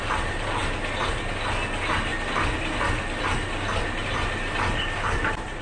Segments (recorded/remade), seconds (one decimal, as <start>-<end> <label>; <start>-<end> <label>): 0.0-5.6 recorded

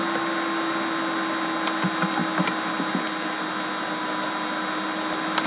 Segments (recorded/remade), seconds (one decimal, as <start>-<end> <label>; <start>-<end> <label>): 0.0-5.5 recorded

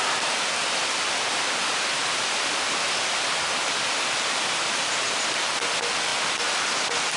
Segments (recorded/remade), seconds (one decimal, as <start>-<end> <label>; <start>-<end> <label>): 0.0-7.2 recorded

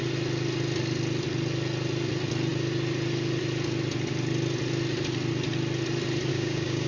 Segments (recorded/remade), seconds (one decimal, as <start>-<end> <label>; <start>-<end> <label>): 0.0-6.3 recorded; 6.3-6.9 remade

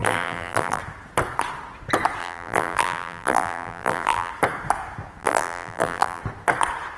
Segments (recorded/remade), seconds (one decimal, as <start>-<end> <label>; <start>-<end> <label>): 0.0-0.8 remade; 0.8-2.2 recorded; 2.2-4.3 remade; 4.3-5.2 recorded; 5.2-6.2 remade; 6.2-7.0 recorded

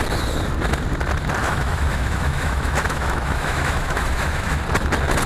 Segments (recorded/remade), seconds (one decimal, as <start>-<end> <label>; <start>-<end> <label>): 0.0-1.4 recorded; 1.4-4.6 remade; 4.6-5.3 recorded